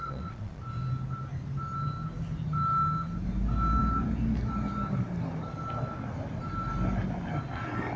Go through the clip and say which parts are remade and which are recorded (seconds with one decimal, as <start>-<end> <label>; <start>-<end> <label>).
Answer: 0.0-0.6 remade; 0.6-8.0 recorded